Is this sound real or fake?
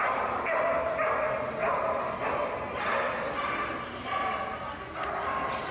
real